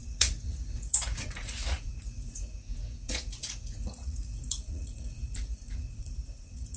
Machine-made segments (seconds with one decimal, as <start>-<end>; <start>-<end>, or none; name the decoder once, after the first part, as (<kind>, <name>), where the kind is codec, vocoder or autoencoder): 0.0-6.8 (vocoder, Vocos)